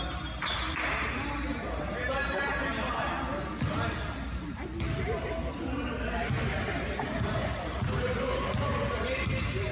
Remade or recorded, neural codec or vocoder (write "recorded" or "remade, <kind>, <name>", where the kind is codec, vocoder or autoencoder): recorded